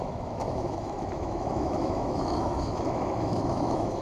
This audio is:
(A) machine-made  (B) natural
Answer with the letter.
A